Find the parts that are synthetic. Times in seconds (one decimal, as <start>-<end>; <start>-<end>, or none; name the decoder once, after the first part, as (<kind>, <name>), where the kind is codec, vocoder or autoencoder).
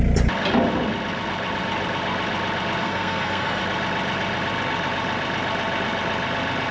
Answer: 2.8-3.6 (codec, SNAC)